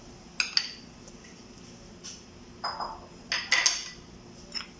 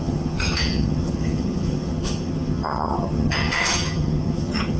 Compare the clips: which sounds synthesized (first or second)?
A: second